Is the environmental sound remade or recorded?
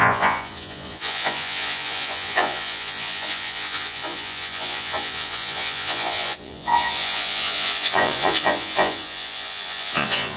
remade